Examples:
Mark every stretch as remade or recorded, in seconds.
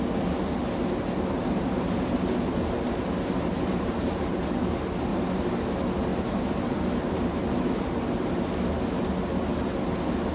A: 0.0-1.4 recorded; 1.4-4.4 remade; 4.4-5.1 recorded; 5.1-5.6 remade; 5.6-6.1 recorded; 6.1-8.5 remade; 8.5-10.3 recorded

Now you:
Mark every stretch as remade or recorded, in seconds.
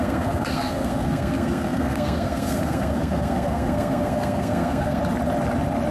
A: 0.0-5.0 remade; 5.0-5.9 recorded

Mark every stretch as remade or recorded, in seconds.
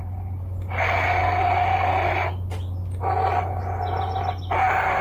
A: 0.0-5.0 recorded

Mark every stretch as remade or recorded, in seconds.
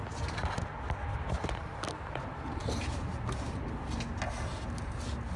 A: 0.0-5.4 recorded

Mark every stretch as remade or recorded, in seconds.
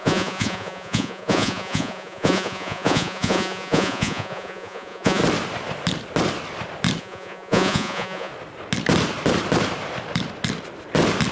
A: 0.0-5.2 remade; 5.2-7.0 recorded; 7.0-8.3 remade; 8.3-11.3 recorded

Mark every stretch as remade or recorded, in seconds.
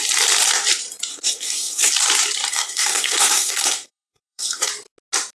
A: 0.0-1.1 recorded; 1.1-1.9 remade; 1.9-2.5 recorded; 2.5-4.7 remade; 4.7-5.4 recorded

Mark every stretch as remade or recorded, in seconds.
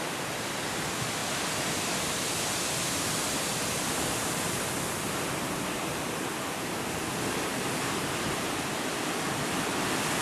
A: 0.0-1.2 recorded; 1.2-5.3 remade; 5.3-10.2 recorded